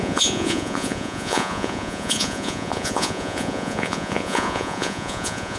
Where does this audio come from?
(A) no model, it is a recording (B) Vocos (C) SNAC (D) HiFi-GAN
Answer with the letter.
B